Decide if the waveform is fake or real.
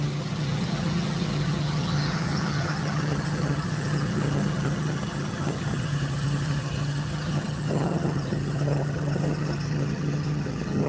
fake